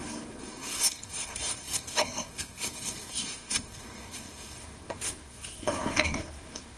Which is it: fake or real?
fake